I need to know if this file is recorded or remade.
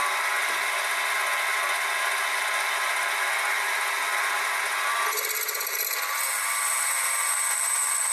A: recorded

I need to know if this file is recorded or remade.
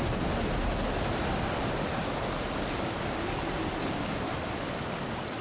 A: recorded